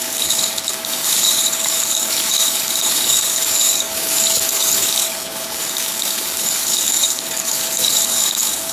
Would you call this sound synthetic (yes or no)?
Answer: yes